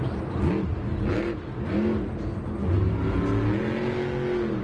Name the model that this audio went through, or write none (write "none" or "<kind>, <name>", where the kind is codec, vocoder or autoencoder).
none